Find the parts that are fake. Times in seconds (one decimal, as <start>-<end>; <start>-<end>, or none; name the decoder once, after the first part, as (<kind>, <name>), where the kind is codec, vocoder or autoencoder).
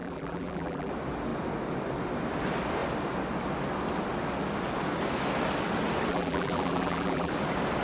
0.0-0.9 (vocoder, BigVGAN v2); 6.1-7.3